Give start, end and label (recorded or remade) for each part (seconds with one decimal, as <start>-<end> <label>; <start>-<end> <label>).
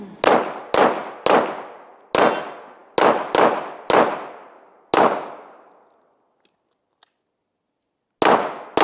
0.0-8.8 recorded